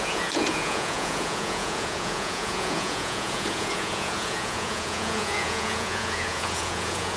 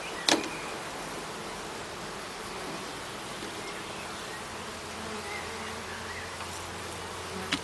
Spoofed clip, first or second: first